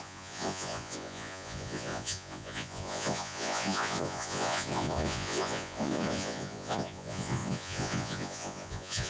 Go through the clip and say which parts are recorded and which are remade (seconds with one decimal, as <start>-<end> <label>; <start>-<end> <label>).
0.0-9.1 remade